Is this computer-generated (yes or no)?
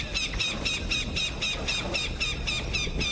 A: no